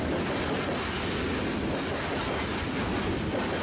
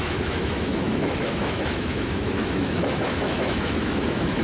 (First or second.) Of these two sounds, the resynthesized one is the second